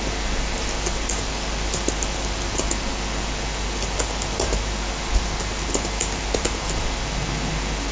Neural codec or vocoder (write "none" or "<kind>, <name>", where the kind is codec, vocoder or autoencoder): none